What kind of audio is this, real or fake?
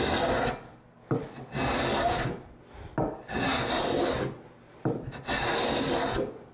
real